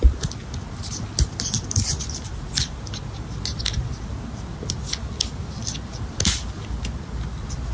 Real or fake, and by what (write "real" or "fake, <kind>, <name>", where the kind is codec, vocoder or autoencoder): real